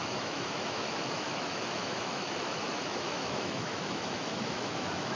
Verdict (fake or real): fake